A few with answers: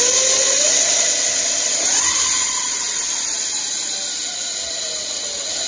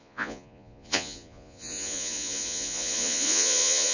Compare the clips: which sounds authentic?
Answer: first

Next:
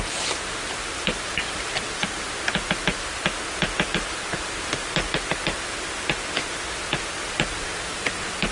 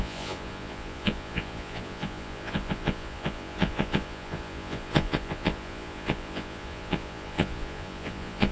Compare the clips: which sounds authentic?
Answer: first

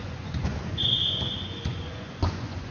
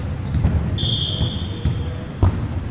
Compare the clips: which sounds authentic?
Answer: second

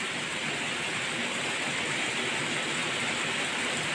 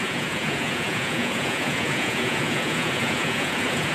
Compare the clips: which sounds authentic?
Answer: first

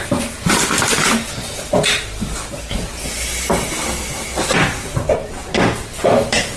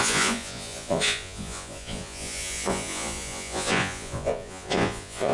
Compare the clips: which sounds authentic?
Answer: first